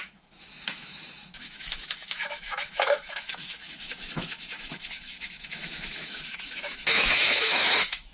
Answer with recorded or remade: remade